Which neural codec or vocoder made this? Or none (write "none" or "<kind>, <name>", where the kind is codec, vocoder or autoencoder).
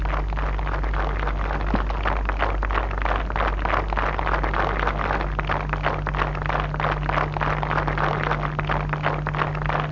none